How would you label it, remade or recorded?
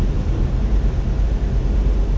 recorded